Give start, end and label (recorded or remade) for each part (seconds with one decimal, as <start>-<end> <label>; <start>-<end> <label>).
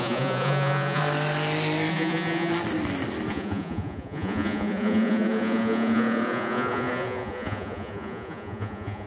0.0-1.0 remade; 1.0-1.9 recorded; 1.9-2.5 remade; 2.5-3.3 recorded; 3.3-9.1 remade